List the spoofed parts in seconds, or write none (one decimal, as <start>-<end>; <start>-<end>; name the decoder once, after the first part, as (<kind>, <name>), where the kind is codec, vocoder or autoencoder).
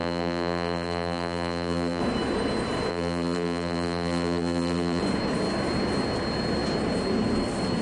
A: 0.0-2.0 (vocoder, BigVGAN v2); 2.9-5.0